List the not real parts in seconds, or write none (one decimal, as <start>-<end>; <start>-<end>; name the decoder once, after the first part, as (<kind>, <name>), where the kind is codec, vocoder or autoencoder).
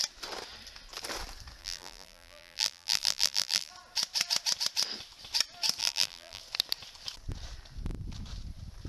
1.6-3.7 (vocoder, BigVGAN v2); 5.8-6.4